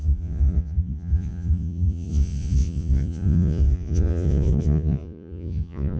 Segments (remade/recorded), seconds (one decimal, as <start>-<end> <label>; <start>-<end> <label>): 0.0-6.0 remade